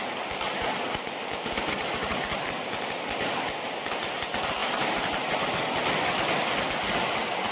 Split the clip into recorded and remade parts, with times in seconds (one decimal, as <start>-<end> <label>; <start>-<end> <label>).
0.0-7.5 recorded

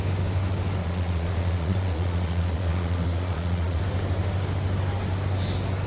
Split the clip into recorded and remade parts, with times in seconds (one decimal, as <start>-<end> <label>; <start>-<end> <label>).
0.0-0.8 recorded; 0.8-3.8 remade; 3.8-5.9 recorded

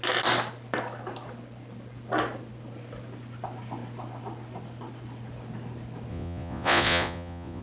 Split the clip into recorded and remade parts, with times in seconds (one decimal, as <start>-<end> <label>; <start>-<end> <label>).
0.0-6.1 recorded; 6.1-7.6 remade

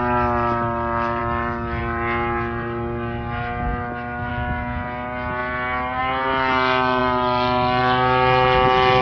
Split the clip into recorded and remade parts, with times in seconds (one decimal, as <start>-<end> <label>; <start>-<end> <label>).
0.0-9.0 recorded

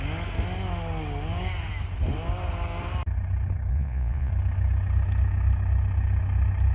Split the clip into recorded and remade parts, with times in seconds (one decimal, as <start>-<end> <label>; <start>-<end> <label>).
0.0-3.7 recorded; 3.7-4.3 remade; 4.3-6.7 recorded

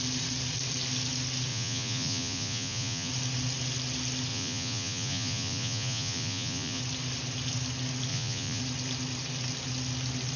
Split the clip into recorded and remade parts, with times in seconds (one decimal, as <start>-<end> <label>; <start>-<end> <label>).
0.0-1.5 recorded; 1.5-3.1 remade; 3.1-4.3 recorded; 4.3-6.8 remade; 6.8-8.1 recorded; 8.1-8.6 remade; 8.6-10.4 recorded